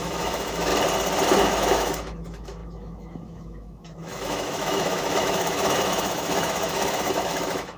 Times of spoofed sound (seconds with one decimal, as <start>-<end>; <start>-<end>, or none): 0.0-0.7; 1.4-7.8